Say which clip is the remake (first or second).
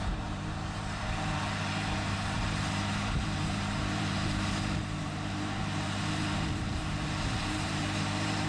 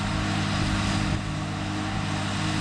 first